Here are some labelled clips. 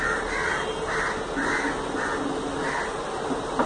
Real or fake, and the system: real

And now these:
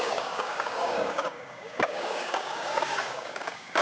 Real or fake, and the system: fake, codec, DAC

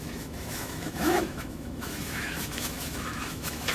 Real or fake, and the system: fake, autoencoder, DAC-VAE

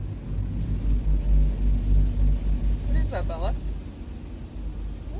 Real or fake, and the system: real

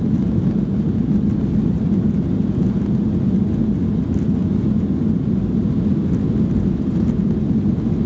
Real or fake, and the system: real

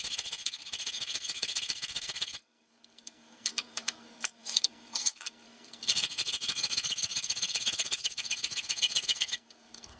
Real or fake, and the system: fake, codec, SNAC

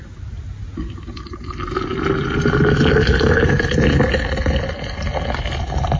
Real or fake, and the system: real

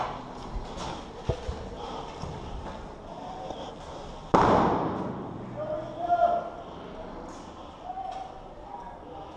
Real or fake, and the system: real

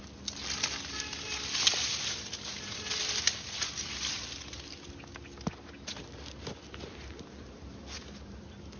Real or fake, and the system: real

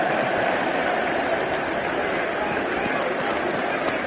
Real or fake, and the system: real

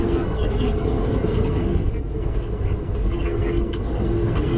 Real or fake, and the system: fake, codec, SNAC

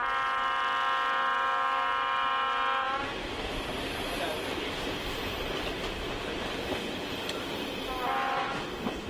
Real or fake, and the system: real